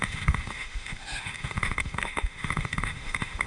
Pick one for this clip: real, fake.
fake